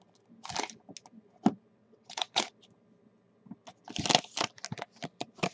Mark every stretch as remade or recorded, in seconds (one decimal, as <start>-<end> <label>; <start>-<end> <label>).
0.0-1.8 recorded; 1.8-2.5 remade; 2.5-5.5 recorded